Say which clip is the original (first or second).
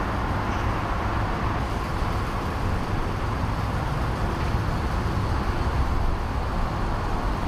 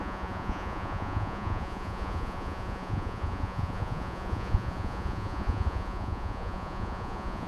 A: first